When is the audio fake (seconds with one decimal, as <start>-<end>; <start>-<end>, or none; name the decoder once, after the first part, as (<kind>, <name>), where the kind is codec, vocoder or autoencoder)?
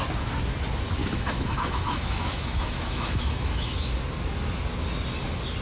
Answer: 1.0-3.9 (autoencoder, DAC-VAE)